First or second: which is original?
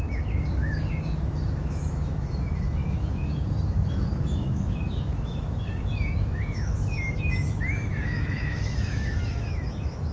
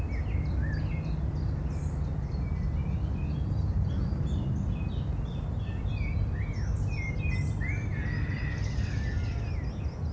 second